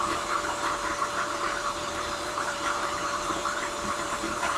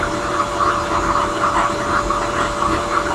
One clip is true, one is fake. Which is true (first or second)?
second